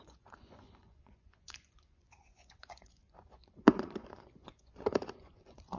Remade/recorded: remade